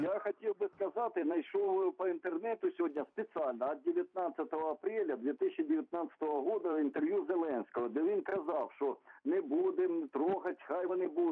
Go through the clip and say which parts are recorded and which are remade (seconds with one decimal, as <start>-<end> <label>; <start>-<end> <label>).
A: 0.0-0.4 recorded; 0.4-2.8 remade; 2.8-4.8 recorded; 4.8-7.3 remade; 7.3-8.3 recorded; 8.3-10.9 remade; 10.9-11.3 recorded